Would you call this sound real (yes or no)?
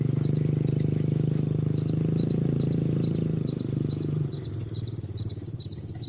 no